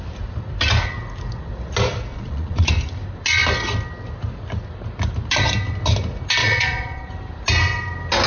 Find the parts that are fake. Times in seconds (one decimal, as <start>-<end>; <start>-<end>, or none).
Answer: 2.1-2.7; 6.4-7.1